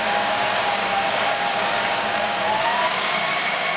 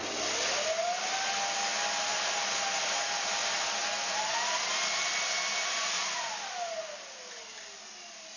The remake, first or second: first